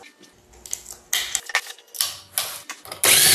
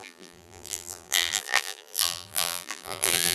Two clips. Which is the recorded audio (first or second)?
first